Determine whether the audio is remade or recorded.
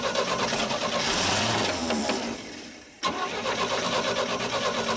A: remade